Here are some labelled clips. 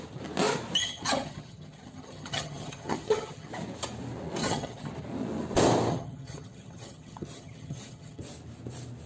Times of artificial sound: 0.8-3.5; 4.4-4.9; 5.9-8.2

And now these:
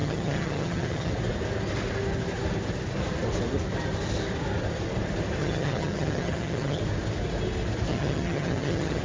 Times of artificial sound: 0.0-1.1; 5.4-6.8; 7.9-9.0

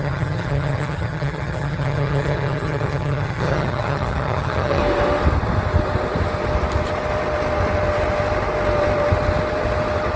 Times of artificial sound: 0.0-4.8

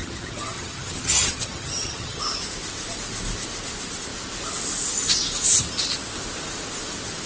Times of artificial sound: 0.0-2.2